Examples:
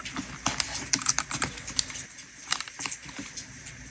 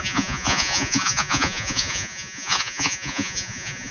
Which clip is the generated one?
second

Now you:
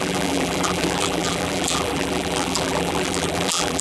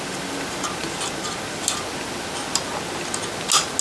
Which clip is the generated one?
first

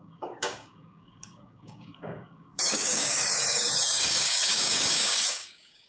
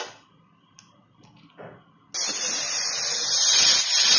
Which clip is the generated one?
first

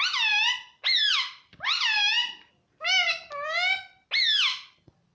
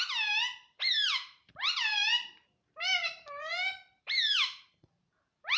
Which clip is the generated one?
second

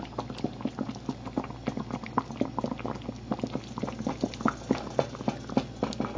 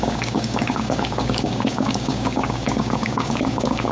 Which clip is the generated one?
second